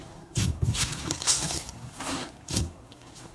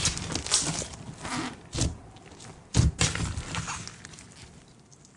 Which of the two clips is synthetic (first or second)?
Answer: first